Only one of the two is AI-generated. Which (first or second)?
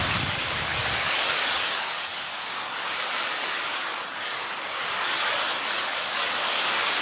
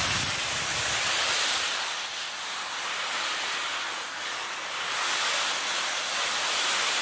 first